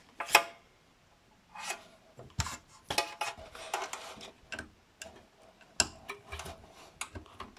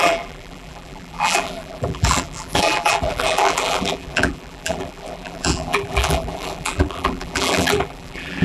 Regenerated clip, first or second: second